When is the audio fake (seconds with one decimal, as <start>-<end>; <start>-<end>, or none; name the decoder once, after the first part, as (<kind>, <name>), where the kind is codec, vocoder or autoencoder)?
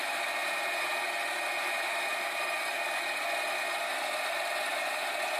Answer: none